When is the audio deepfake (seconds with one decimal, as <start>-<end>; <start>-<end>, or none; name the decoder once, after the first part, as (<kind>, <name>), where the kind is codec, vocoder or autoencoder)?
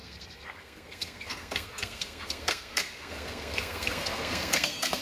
0.0-5.0 (codec, SNAC)